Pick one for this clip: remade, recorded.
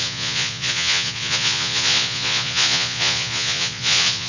remade